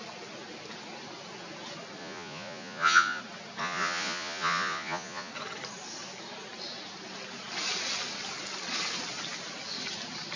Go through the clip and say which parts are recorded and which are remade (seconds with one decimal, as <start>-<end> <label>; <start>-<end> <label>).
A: 0.0-2.0 recorded; 2.0-3.2 remade; 3.2-3.6 recorded; 3.6-5.3 remade; 5.3-10.4 recorded